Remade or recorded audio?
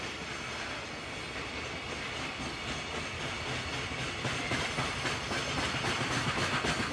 recorded